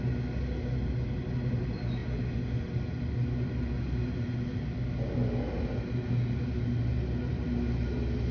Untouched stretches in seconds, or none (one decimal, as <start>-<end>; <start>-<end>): 0.0-8.3